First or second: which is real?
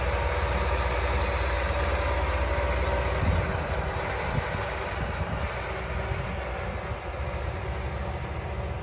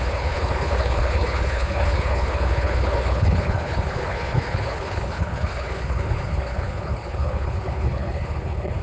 first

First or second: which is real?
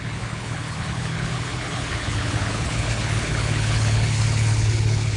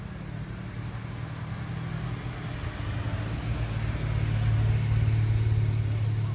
second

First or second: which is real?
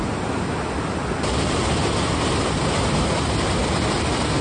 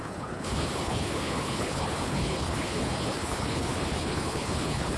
first